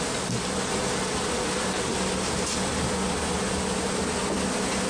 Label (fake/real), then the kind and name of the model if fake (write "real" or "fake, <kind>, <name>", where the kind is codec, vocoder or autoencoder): real